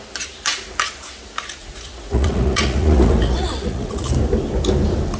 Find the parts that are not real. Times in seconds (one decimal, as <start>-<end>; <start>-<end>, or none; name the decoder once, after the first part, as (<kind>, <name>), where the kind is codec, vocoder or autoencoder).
1.6-4.1 (vocoder, Vocos)